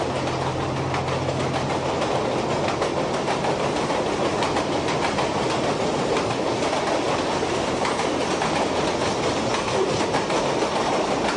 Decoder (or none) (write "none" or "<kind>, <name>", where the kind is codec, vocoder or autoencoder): none